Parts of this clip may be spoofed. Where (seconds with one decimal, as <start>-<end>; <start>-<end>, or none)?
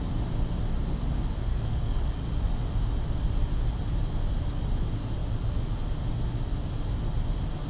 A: 1.5-2.2